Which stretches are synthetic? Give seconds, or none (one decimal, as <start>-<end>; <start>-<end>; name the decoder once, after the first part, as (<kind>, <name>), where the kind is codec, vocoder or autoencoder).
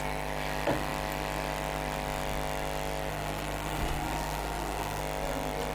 3.1-5.0 (codec, SNAC)